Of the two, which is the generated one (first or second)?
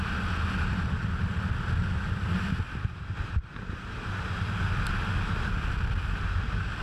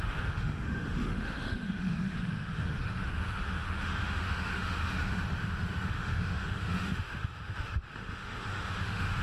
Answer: second